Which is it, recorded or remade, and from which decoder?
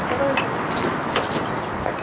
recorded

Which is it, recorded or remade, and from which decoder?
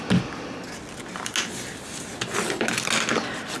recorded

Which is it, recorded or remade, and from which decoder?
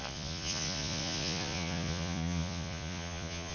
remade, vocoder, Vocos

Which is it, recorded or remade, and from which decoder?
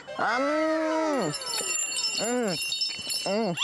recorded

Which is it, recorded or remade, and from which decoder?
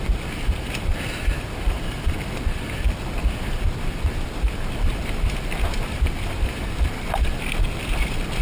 recorded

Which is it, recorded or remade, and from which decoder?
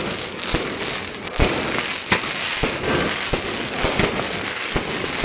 recorded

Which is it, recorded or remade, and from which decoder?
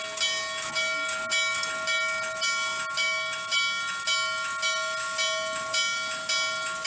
recorded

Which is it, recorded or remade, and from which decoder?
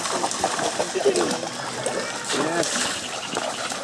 recorded